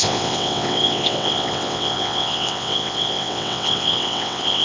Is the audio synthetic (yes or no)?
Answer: yes